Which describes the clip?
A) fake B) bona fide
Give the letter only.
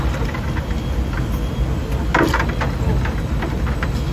B